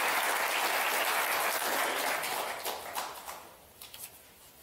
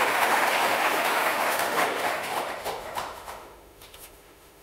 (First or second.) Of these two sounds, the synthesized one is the second